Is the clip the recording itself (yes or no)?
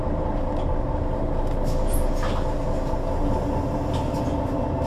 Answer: yes